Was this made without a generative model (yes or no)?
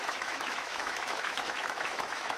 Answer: no